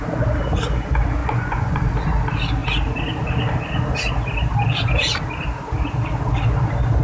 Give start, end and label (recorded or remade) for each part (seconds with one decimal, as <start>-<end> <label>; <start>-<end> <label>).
0.0-1.2 recorded; 1.2-1.9 remade; 1.9-7.0 recorded